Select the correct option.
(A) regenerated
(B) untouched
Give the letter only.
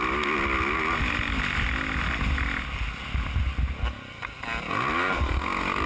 B